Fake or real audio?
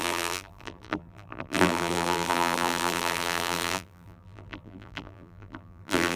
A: fake